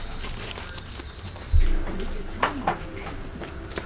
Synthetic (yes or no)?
no